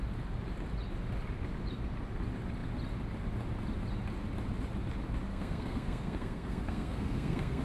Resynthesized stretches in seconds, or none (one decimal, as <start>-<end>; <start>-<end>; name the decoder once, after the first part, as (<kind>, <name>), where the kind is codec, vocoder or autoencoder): 5.3-7.6 (codec, SNAC)